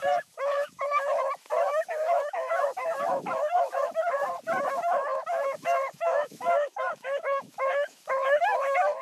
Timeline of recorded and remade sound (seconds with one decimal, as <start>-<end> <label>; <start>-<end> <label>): 0.0-4.0 remade; 4.0-4.7 recorded; 4.7-9.0 remade